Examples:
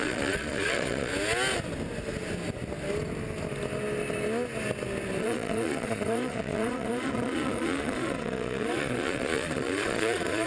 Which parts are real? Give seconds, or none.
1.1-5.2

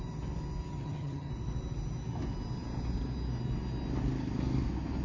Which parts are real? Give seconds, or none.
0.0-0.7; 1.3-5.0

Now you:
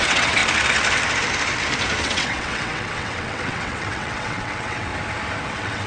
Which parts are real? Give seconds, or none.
0.4-2.0; 4.9-5.5